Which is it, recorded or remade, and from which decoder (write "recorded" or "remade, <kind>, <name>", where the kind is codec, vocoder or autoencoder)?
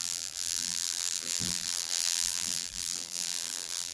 remade, vocoder, BigVGAN v2